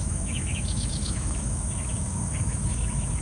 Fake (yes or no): yes